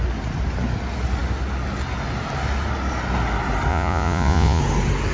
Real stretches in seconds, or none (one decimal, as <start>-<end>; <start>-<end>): 0.0-3.7; 4.6-5.1